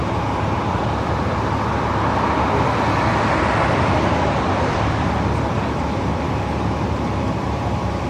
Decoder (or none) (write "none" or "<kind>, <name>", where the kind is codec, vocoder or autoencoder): vocoder, BigVGAN v2